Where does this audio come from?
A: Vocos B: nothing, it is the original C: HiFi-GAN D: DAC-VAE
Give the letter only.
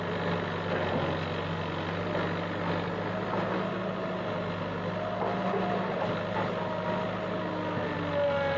B